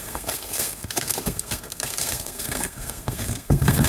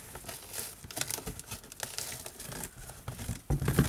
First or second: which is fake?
first